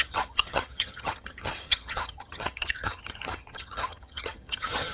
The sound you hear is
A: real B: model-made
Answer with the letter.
B